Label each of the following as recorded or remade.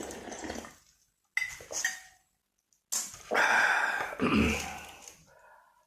recorded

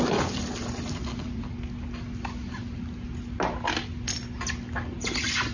recorded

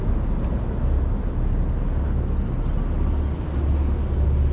recorded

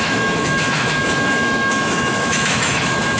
remade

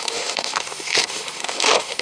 remade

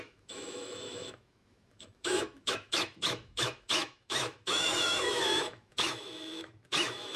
remade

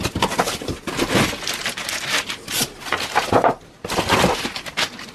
recorded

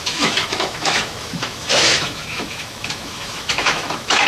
remade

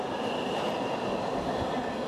recorded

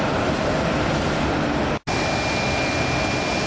recorded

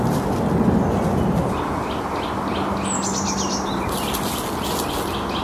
recorded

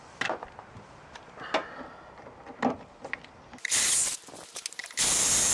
recorded